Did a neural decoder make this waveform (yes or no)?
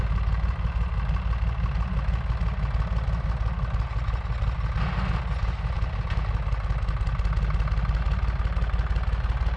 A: no